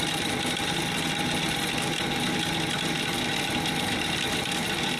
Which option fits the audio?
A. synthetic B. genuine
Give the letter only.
B